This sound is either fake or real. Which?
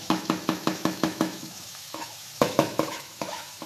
fake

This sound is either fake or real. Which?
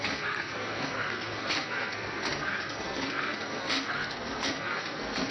fake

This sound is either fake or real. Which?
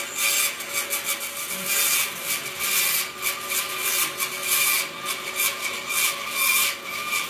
real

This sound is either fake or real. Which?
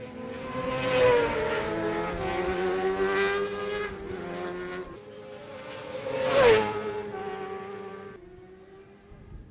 real